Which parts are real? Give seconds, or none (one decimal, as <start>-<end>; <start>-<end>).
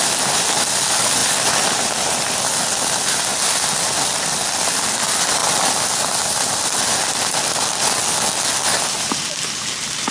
0.0-10.1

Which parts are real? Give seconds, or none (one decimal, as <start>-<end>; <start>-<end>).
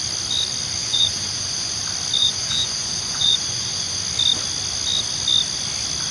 0.0-0.8; 1.8-2.2; 4.0-6.1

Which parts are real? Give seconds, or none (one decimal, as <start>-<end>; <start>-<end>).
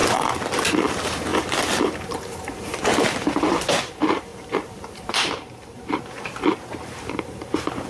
0.0-0.7; 1.3-1.8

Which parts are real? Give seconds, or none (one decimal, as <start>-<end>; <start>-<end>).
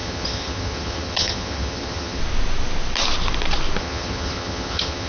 2.2-3.8